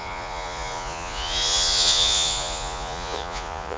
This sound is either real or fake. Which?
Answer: fake